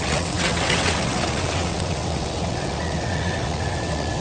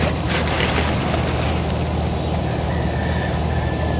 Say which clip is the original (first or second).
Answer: second